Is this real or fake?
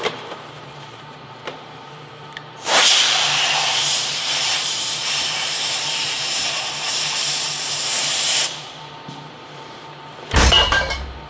fake